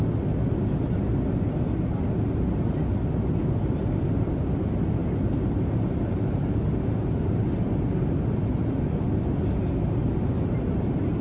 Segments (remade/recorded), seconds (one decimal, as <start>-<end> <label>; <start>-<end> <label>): 0.0-5.0 recorded; 5.0-6.5 remade; 6.5-11.2 recorded